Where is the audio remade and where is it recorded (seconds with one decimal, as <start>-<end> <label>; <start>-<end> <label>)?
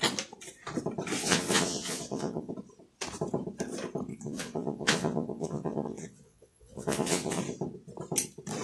0.0-1.2 recorded; 1.2-2.5 remade; 2.5-4.1 recorded; 4.1-7.4 remade; 7.4-8.6 recorded